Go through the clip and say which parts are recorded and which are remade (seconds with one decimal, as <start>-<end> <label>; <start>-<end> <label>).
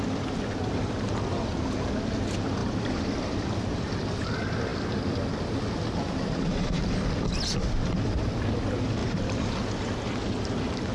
0.0-2.6 recorded; 2.6-4.0 remade; 4.0-9.0 recorded; 9.0-9.5 remade; 9.5-10.9 recorded